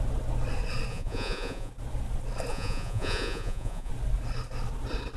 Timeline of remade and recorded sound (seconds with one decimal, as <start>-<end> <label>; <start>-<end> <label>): 0.0-0.9 recorded; 0.9-1.7 remade; 1.7-2.5 recorded; 2.5-3.9 remade; 3.9-5.2 recorded